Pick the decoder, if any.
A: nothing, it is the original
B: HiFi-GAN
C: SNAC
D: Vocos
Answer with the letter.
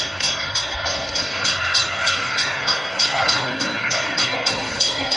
C